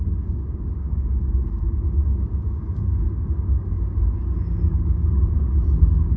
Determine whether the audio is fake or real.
fake